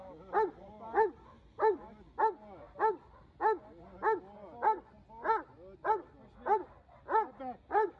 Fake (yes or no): no